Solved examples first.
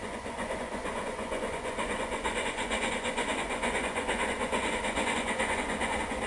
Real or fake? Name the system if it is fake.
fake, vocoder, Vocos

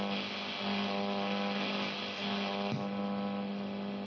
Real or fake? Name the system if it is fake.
real